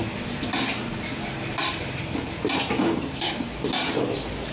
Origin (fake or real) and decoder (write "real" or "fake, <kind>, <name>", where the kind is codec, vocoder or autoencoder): real